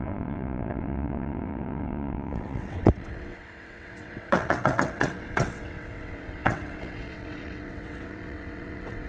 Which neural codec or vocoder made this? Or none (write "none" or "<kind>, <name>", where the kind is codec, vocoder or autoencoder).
vocoder, WaveNeXt